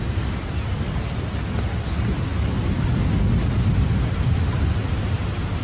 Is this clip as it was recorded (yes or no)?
yes